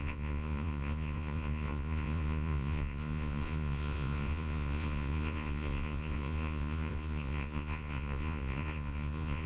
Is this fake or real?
fake